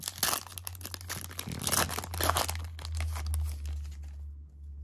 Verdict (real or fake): real